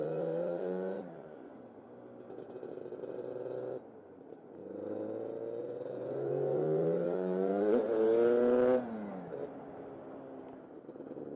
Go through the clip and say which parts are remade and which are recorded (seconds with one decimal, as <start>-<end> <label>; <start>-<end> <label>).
0.0-1.5 remade; 1.5-4.0 recorded; 4.0-4.6 remade; 4.6-5.6 recorded; 5.6-7.8 remade; 7.8-11.4 recorded